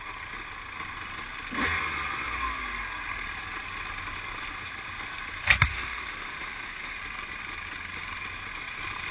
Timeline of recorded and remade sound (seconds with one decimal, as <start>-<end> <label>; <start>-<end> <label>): 0.0-5.7 recorded; 5.7-7.0 remade; 7.0-9.1 recorded